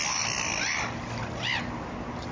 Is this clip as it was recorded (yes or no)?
yes